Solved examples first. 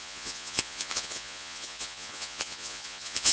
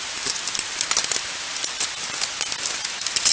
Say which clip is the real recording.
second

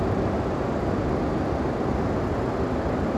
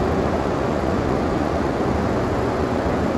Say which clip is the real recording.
first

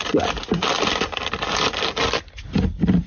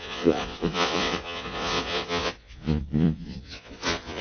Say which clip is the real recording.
first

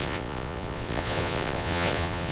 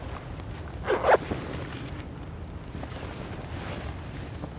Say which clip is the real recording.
second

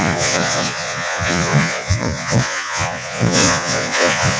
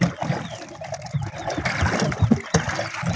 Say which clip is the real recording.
second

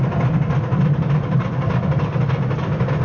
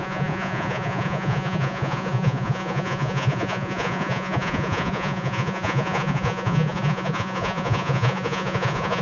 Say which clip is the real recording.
first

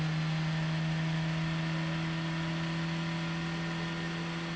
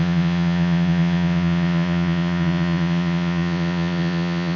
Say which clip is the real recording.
first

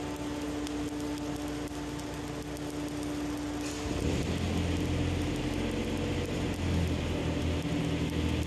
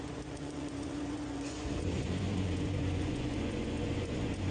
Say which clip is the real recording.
first